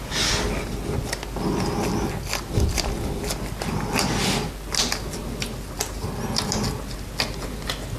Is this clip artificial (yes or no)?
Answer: no